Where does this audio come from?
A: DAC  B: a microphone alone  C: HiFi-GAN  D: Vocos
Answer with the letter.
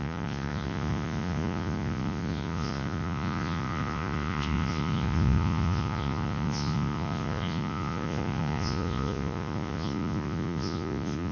D